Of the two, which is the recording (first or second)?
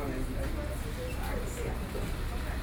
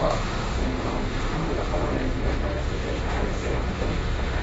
first